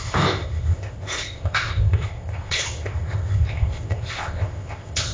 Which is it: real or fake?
fake